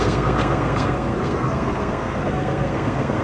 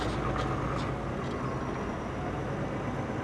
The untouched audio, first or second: second